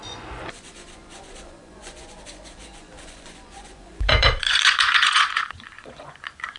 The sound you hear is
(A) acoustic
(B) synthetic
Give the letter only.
B